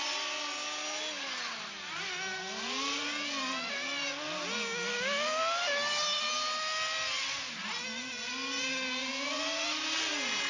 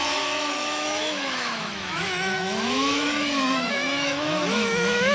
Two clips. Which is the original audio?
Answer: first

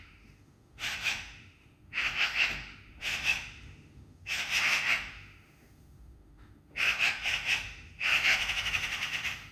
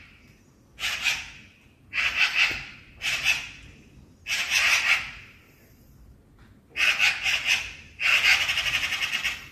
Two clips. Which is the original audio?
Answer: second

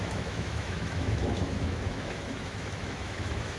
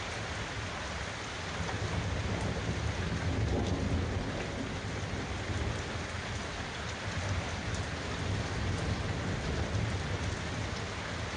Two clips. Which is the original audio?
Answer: second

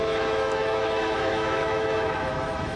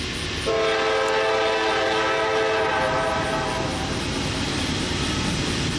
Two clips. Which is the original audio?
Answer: second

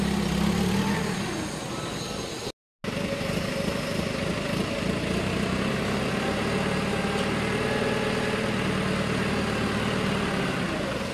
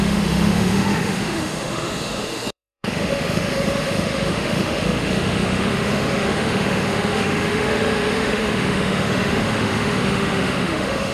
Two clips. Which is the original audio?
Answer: first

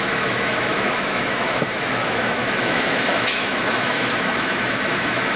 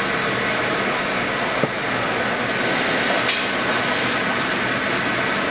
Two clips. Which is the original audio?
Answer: second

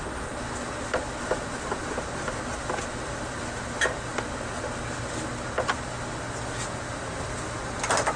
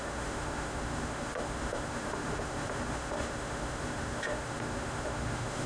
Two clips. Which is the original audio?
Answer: first